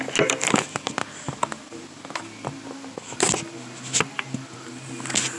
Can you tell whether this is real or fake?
real